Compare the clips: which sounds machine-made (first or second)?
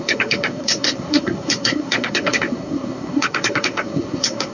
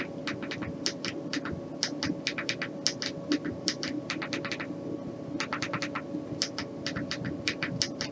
first